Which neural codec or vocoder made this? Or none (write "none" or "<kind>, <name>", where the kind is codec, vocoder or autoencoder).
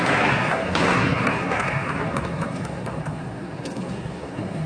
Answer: codec, SNAC